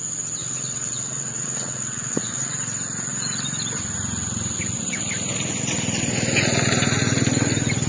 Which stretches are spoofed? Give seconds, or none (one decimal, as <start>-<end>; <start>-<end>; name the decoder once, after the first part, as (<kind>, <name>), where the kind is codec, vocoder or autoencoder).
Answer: 0.4-2.5 (vocoder, WaveNeXt)